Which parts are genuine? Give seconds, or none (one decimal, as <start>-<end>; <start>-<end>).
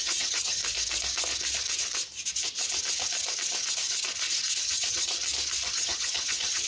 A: 0.6-4.6; 5.2-5.7